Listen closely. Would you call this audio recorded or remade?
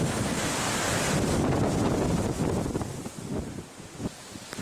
recorded